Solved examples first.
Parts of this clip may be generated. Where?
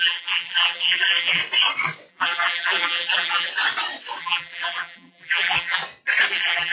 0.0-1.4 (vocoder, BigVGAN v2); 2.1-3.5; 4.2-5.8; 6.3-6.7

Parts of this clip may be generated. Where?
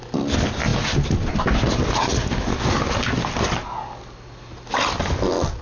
none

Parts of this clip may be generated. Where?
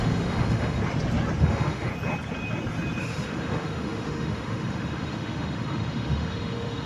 0.0-0.8 (autoencoder, DAC-VAE); 1.4-1.9; 3.0-6.9